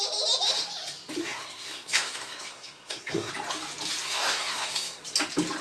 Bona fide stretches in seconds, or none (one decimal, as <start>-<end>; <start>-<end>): 0.0-1.2; 3.3-4.0; 5.0-5.6